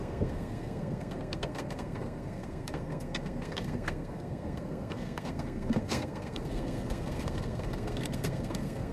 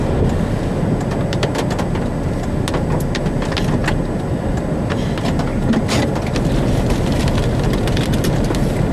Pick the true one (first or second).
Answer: second